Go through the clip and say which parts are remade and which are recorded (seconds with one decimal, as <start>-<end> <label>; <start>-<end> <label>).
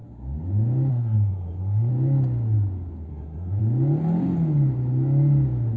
0.0-0.9 recorded; 0.9-1.9 remade; 1.9-3.1 recorded; 3.1-3.6 remade; 3.6-5.8 recorded